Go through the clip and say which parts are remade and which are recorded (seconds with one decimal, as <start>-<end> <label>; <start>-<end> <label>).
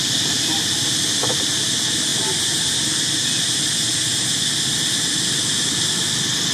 0.0-6.5 recorded